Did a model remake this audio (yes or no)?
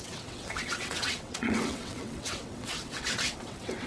yes